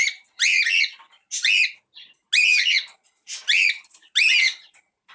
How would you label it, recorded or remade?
recorded